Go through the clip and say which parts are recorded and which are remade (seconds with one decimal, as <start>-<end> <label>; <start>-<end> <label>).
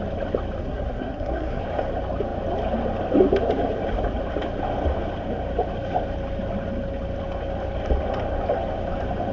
0.0-0.6 recorded; 0.6-1.6 remade; 1.6-9.3 recorded